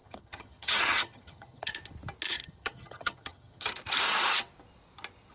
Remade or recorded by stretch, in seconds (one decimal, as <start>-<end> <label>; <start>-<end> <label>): 0.0-1.7 remade; 1.7-2.3 recorded; 2.3-3.7 remade; 3.7-5.3 recorded